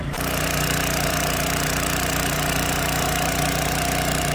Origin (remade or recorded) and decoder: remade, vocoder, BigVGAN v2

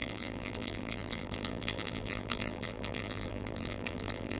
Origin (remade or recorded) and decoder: remade, vocoder, BigVGAN v2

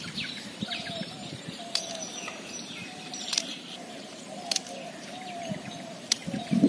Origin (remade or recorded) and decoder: remade, vocoder, BigVGAN v2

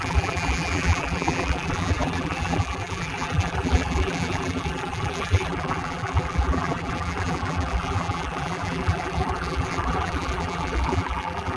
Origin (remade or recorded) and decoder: remade, vocoder, BigVGAN v2